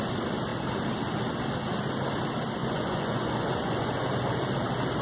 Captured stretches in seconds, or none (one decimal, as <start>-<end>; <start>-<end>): 0.0-2.6; 3.9-5.0